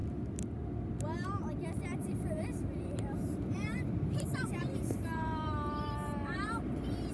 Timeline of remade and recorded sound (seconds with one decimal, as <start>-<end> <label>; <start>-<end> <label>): 0.0-1.8 recorded; 1.8-7.1 remade